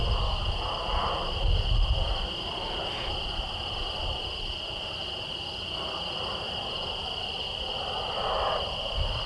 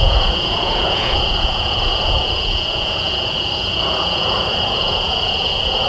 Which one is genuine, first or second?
first